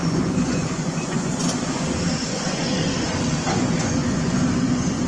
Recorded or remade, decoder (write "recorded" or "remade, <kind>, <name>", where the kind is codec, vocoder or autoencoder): remade, vocoder, Vocos